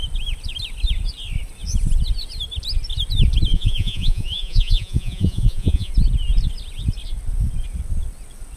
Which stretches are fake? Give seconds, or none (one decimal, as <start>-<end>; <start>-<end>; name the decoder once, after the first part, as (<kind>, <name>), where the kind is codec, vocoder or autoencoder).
3.5-5.9 (vocoder, Vocos)